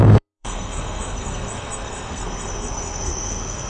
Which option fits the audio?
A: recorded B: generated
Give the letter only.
B